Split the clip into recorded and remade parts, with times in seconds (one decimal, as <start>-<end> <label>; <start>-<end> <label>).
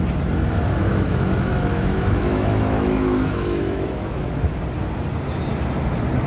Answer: 0.0-0.8 recorded; 0.8-4.6 remade; 4.6-6.3 recorded